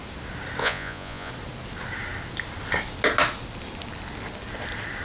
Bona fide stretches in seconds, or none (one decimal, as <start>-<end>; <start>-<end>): 0.0-0.6; 1.3-5.0